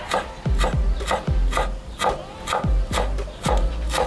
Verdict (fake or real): real